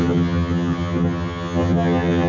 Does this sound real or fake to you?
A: fake